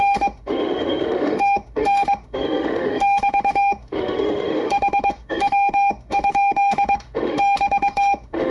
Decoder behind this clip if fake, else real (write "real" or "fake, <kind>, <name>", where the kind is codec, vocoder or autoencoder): fake, autoencoder, DAC-VAE